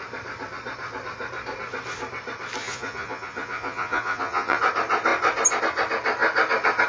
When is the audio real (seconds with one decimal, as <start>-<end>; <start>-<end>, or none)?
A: 0.0-2.6; 4.6-6.9